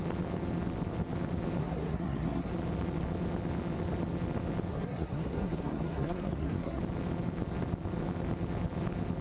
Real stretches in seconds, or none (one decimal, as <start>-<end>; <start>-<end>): 0.0-1.6; 2.5-4.7; 6.8-9.2